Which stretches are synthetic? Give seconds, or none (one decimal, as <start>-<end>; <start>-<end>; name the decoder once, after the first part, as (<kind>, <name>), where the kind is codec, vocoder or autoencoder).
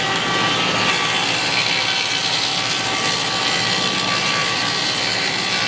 4.4-5.0 (vocoder, BigVGAN v2)